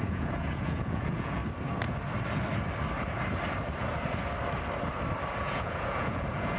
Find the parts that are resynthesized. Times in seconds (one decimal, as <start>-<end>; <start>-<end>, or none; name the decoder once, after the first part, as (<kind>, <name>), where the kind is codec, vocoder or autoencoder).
0.0-1.4 (vocoder, Vocos); 5.4-6.6